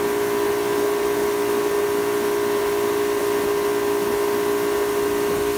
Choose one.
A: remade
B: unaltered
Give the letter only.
B